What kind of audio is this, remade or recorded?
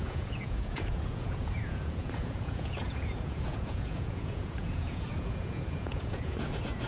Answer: remade